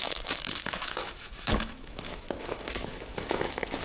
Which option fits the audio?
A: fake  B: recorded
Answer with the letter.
A